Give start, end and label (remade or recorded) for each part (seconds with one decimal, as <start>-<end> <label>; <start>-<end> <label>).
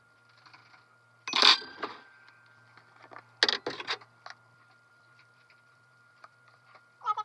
0.0-0.6 remade; 0.6-4.9 recorded; 4.9-7.2 remade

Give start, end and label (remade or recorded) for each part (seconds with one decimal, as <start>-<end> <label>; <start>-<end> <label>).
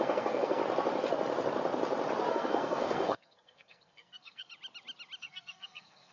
0.0-0.6 remade; 0.6-2.3 recorded; 2.3-4.5 remade; 4.5-5.2 recorded; 5.2-6.1 remade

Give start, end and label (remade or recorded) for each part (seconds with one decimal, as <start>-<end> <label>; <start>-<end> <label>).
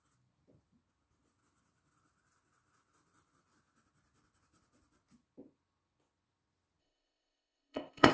0.0-6.8 recorded; 6.8-8.1 remade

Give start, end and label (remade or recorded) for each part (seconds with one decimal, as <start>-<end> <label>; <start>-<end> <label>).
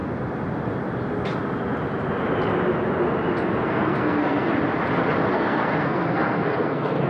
0.0-3.6 recorded; 3.6-4.5 remade; 4.5-5.3 recorded; 5.3-7.1 remade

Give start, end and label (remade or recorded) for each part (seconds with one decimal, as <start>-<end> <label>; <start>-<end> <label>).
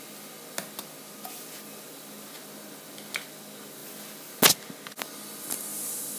0.0-6.2 recorded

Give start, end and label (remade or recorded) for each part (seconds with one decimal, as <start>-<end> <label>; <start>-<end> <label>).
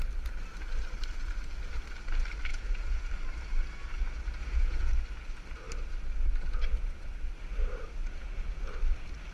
0.0-2.5 recorded; 2.5-3.1 remade; 3.1-4.4 recorded; 4.4-4.9 remade; 4.9-8.0 recorded; 8.0-8.6 remade; 8.6-9.3 recorded